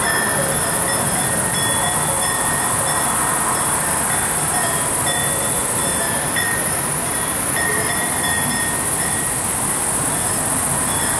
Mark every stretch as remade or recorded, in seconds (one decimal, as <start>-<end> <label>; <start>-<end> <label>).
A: 0.0-5.6 recorded; 5.6-8.5 remade; 8.5-11.2 recorded